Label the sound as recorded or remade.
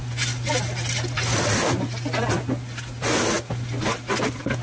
recorded